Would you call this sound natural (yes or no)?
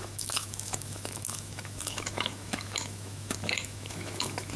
no